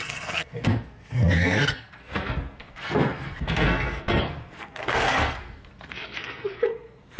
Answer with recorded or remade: remade